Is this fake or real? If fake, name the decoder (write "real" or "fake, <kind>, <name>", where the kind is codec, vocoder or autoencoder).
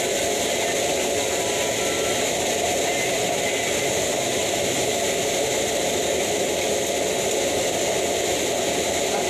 real